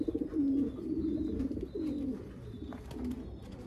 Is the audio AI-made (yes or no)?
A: no